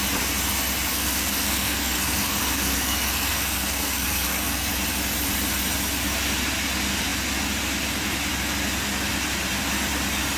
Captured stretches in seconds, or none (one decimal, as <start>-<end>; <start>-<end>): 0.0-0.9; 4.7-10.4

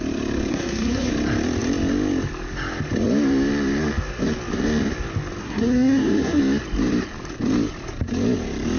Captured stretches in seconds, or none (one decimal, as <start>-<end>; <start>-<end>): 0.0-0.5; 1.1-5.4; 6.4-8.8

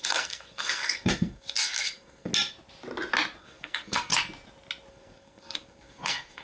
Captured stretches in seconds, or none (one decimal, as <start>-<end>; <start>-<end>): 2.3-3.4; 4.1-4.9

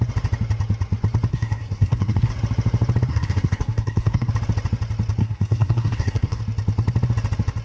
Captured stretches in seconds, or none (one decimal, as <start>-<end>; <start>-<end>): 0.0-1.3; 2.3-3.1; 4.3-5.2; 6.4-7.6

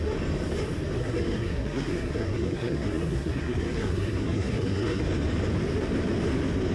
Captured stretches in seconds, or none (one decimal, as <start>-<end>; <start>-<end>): 0.0-1.0; 5.0-6.7

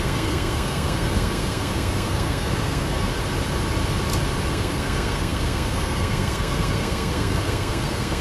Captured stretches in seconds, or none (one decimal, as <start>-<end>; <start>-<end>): 3.1-4.5